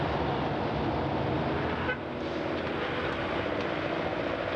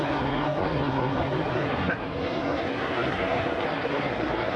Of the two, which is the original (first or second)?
first